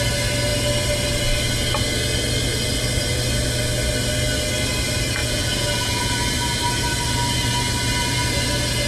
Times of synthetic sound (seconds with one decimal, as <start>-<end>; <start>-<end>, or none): 5.2-6.1